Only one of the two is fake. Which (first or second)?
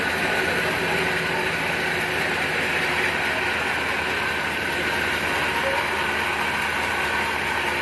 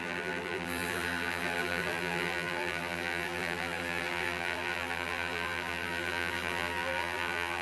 second